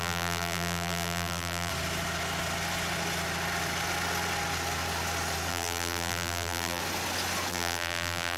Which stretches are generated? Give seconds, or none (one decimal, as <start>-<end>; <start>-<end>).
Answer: 0.0-1.7; 5.5-6.8; 7.5-8.4